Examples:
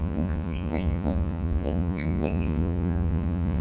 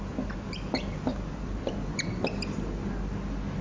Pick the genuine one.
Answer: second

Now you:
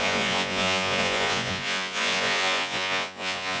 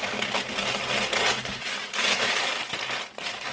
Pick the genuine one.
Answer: second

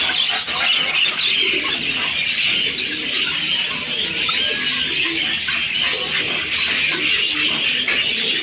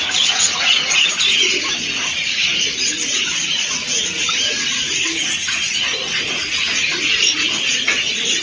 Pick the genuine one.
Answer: first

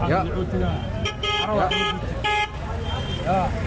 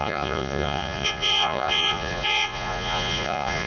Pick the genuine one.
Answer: first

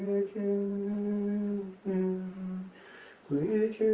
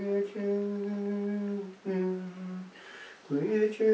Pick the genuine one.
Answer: second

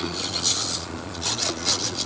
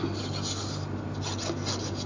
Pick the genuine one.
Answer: second